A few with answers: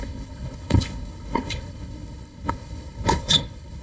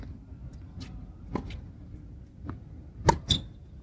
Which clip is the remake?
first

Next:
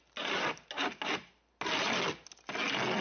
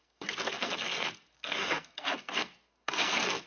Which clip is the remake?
second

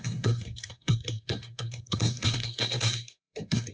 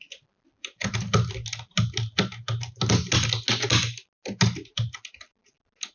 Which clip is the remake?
first